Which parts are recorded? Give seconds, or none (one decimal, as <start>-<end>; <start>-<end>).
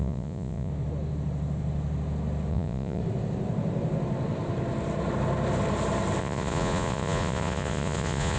0.7-2.5; 3.0-6.2